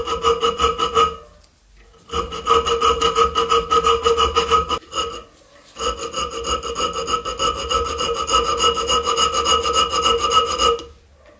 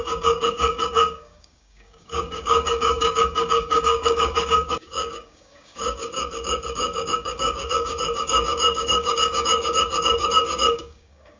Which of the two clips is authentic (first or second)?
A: first